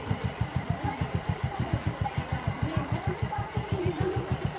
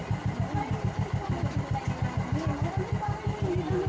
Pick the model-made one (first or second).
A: first